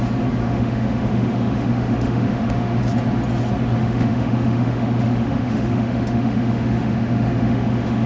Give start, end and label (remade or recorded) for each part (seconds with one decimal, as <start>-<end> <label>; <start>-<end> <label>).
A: 0.0-0.4 recorded; 0.4-2.8 remade; 2.8-3.8 recorded; 3.8-8.1 remade